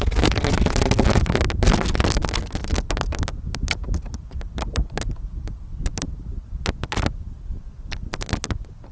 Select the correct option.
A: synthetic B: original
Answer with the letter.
B